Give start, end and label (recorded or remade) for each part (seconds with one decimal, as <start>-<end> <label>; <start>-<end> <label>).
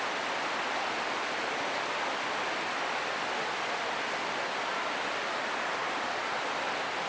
0.0-7.1 recorded